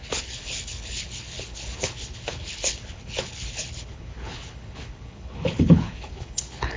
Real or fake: fake